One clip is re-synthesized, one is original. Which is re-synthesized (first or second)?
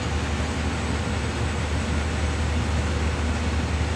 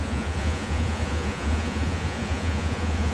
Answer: second